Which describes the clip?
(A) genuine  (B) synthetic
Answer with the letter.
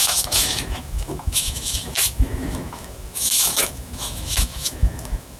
B